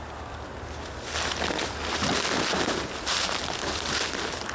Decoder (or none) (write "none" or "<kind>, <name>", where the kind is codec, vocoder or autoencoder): none